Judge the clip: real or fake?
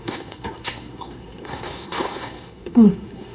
fake